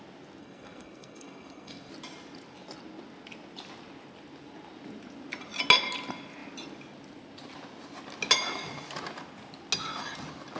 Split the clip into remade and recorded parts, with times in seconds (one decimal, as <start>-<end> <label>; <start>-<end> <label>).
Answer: 0.0-0.4 recorded; 0.4-1.9 remade; 1.9-10.6 recorded